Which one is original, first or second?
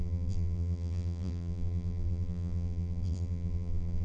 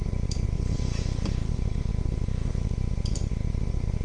second